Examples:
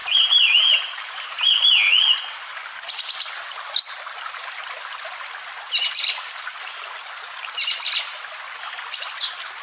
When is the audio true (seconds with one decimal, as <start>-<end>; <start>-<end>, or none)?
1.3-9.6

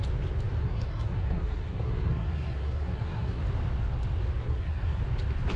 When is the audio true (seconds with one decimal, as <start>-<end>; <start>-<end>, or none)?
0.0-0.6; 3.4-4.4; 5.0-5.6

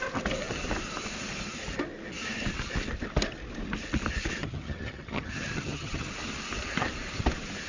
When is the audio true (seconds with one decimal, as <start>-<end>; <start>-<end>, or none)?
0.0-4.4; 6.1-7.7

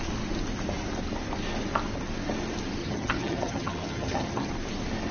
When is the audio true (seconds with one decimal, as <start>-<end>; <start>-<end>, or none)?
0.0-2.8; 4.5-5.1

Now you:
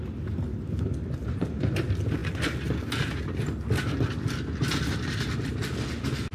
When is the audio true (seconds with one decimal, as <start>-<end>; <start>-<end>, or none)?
0.0-6.3